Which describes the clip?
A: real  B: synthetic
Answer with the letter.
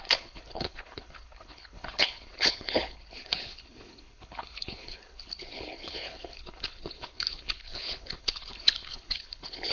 B